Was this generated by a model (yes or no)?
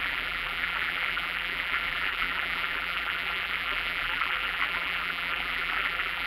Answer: yes